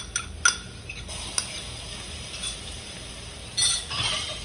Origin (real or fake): real